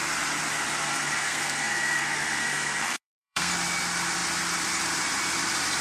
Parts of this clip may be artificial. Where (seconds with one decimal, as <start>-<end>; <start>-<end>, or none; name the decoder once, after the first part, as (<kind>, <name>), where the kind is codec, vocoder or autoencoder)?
0.9-3.5 (codec, SNAC)